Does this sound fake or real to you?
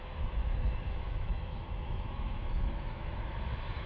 fake